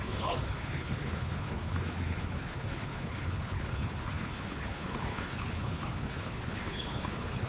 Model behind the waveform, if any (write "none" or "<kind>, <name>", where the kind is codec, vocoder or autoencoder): codec, HILCodec